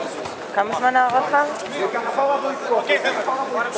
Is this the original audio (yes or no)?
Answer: yes